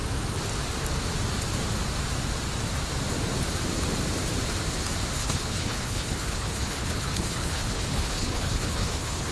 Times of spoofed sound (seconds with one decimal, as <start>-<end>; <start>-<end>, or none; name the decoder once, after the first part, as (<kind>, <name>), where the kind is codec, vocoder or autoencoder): 5.2-9.3 (codec, HILCodec)